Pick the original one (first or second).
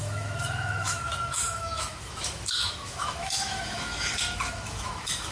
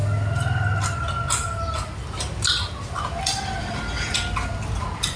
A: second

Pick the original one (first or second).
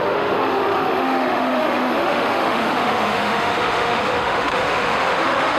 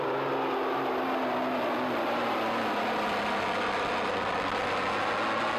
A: second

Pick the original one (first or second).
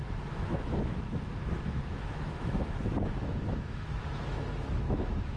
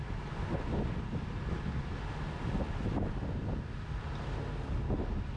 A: second